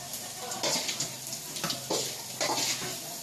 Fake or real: real